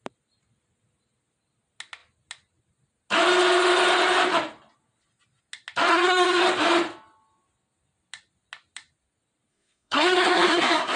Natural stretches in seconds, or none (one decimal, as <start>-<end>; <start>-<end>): 0.0-5.9; 6.4-9.5